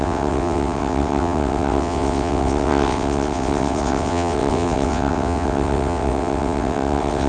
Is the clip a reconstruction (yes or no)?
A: yes